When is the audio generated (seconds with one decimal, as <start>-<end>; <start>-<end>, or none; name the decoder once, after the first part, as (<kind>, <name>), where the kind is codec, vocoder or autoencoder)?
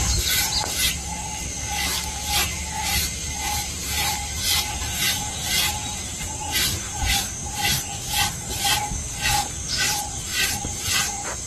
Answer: 3.2-7.0 (vocoder, BigVGAN v2)